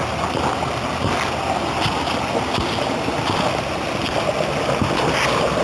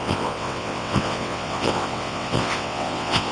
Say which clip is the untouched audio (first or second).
first